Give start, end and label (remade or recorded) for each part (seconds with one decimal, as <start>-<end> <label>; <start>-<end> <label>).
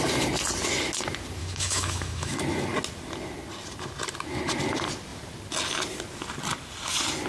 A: 0.0-1.4 recorded; 1.4-2.4 remade; 2.4-7.3 recorded